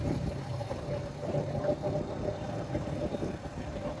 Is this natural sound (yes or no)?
no